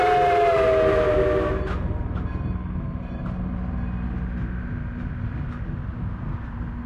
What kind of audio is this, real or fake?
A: real